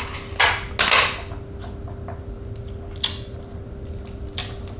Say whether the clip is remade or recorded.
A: recorded